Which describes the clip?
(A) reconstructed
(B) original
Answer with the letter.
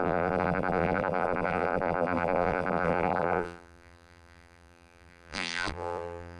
A